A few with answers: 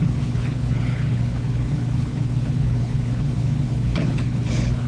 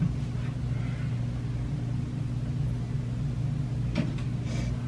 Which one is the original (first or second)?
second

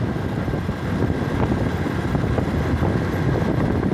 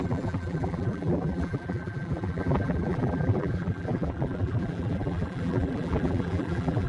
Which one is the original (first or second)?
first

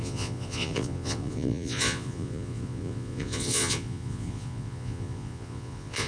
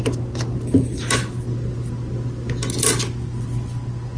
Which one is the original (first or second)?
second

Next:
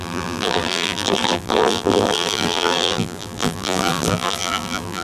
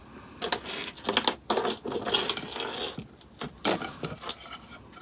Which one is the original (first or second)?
second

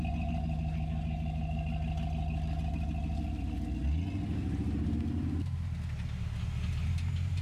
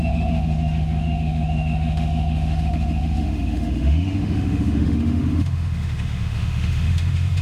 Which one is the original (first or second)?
first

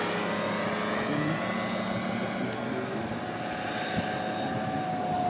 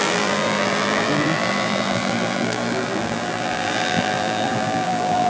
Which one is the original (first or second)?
first